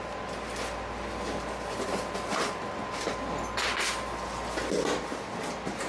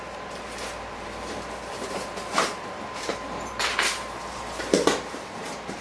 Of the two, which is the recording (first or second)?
first